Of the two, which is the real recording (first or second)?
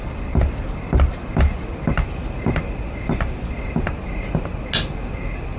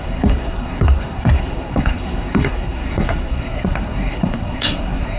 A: first